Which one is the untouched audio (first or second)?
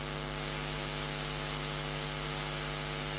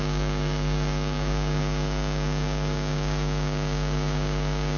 first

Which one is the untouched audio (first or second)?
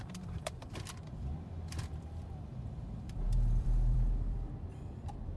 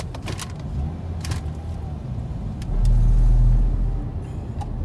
second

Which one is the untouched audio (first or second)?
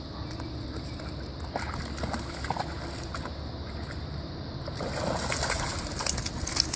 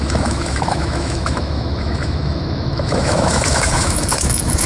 first